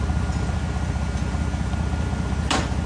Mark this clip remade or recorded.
recorded